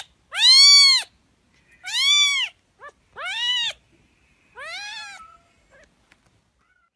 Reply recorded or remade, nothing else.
recorded